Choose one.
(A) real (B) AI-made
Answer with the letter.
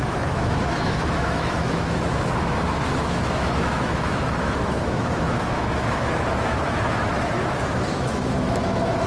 B